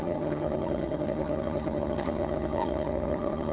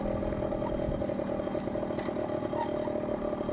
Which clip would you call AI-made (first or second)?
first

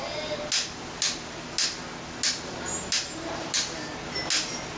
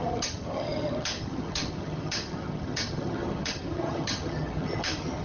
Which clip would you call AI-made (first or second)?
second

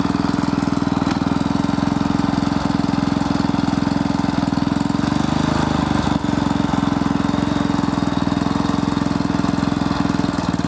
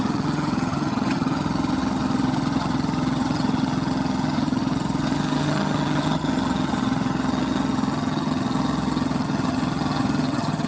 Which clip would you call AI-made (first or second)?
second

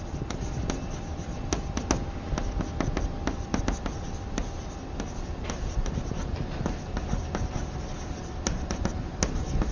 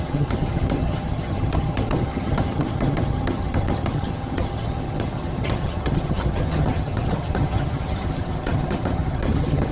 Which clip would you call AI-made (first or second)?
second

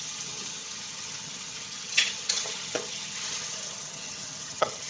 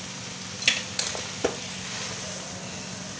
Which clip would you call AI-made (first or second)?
first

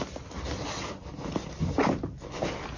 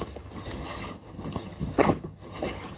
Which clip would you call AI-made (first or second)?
second